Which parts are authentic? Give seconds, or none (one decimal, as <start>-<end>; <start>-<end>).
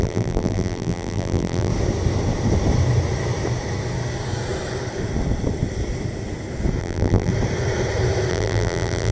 1.7-6.8; 7.3-8.3